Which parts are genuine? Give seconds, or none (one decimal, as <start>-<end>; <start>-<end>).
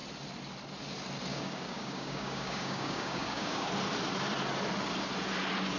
0.0-1.3; 3.7-5.8